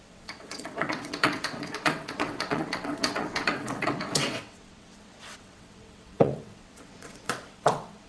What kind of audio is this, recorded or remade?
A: remade